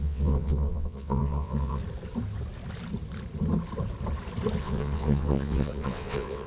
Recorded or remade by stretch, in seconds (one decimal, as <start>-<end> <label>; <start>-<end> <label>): 0.0-1.8 remade; 1.8-4.6 recorded; 4.6-6.5 remade